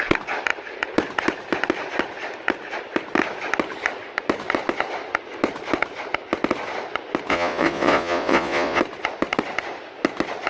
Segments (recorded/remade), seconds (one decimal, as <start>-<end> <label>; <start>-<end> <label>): 0.0-7.3 recorded; 7.3-8.8 remade; 8.8-10.5 recorded